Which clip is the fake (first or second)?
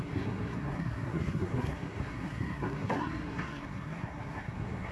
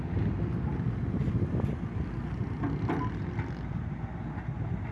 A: first